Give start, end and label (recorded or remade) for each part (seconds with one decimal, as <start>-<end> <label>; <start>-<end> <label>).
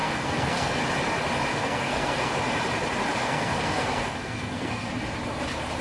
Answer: 0.0-0.8 remade; 0.8-1.5 recorded; 1.5-2.3 remade; 2.3-3.2 recorded; 3.2-4.9 remade; 4.9-5.8 recorded